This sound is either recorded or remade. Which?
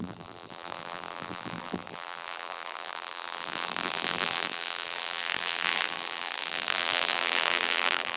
remade